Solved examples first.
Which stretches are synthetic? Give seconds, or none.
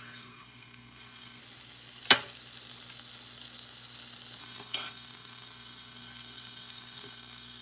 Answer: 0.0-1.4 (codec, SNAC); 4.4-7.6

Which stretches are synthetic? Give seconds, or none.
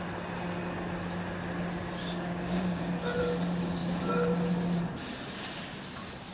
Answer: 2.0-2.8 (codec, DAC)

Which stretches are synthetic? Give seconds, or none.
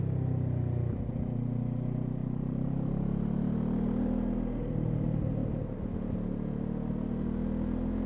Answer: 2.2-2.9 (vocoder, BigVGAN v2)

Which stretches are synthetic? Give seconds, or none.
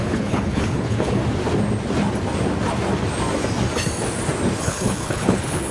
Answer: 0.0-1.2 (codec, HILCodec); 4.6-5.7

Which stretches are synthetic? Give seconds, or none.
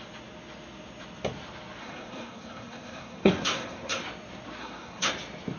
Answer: 1.8-4.0 (codec, SNAC); 4.6-5.1